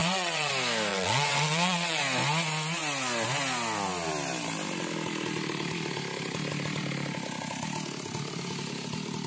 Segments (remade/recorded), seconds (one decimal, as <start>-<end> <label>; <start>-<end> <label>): 0.0-0.5 remade; 0.5-0.9 recorded; 0.9-2.0 remade; 2.0-9.3 recorded